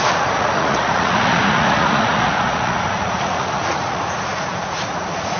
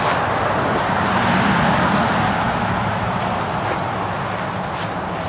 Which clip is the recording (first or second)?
second